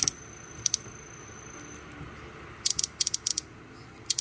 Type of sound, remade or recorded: recorded